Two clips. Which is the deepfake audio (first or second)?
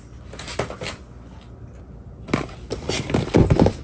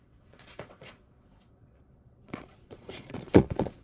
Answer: second